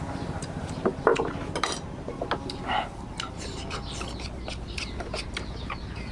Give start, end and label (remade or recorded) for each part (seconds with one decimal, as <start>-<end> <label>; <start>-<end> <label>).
0.0-1.1 remade; 1.1-4.8 recorded; 4.8-6.1 remade